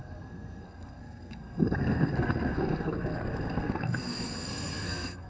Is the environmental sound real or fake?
fake